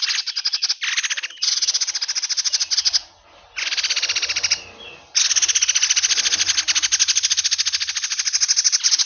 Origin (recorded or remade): recorded